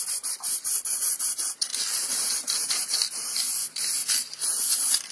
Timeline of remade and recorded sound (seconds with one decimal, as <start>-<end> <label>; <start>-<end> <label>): 0.0-1.7 remade; 1.7-3.1 recorded; 3.1-4.0 remade; 4.0-5.1 recorded